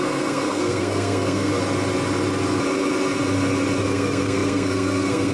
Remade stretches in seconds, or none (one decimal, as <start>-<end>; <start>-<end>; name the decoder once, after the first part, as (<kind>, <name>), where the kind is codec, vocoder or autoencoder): 0.0-1.5 (codec, SNAC); 3.8-5.3